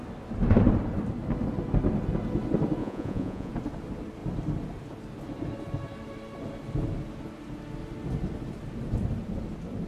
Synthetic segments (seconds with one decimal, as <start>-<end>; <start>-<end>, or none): 2.8-3.5